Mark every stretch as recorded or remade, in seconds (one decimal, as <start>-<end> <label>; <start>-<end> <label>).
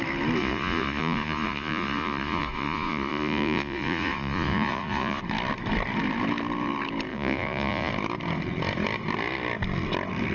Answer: 0.0-0.4 recorded; 0.4-5.2 remade; 5.2-7.1 recorded; 7.1-7.9 remade; 7.9-10.3 recorded